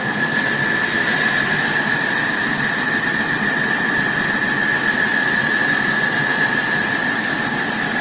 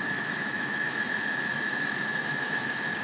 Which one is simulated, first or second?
second